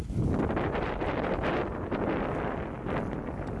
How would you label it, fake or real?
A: real